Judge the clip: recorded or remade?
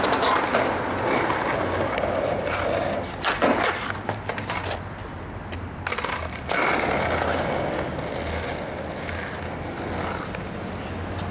recorded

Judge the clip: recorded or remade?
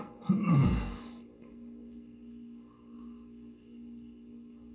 remade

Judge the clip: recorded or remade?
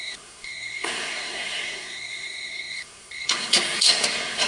remade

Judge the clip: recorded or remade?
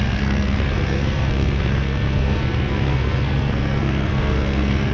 remade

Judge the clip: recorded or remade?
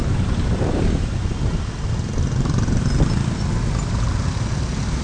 recorded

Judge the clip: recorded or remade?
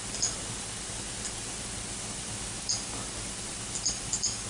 recorded